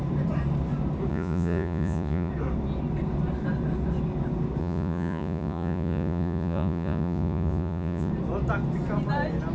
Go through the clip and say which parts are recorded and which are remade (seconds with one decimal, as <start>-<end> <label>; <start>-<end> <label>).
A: 0.0-1.1 recorded; 1.1-2.3 remade; 2.3-4.6 recorded; 4.6-8.1 remade; 8.1-9.5 recorded